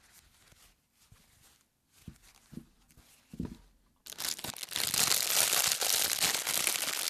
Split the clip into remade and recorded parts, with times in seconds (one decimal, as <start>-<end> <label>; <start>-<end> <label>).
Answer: 0.0-7.1 recorded